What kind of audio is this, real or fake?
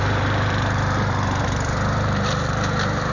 fake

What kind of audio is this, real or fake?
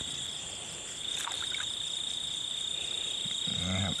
fake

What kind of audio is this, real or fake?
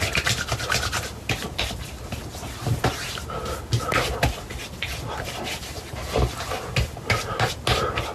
real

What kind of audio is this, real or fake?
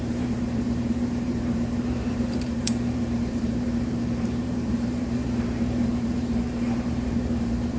fake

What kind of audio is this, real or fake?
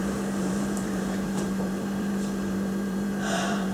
fake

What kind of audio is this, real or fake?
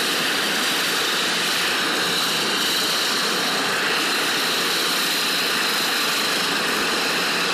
real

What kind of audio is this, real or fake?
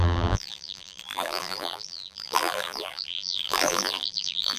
fake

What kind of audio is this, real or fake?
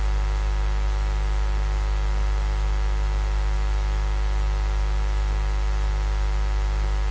real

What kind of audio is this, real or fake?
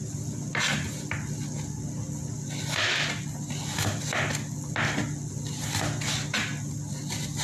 real